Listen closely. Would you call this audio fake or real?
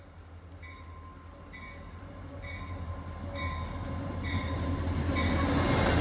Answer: real